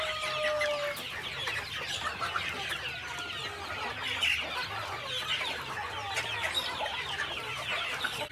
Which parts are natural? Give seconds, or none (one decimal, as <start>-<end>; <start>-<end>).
0.0-8.3